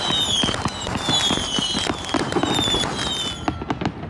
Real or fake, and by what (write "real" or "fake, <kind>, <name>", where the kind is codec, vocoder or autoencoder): real